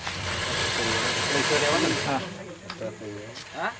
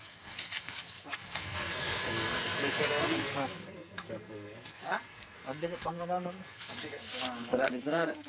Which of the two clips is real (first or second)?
first